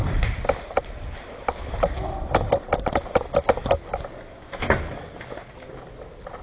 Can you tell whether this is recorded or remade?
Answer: recorded